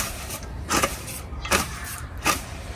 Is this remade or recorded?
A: remade